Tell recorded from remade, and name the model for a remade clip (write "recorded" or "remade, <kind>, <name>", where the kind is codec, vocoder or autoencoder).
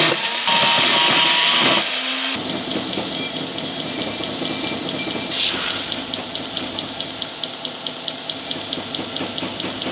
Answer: recorded